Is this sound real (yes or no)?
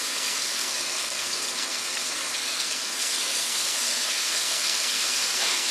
no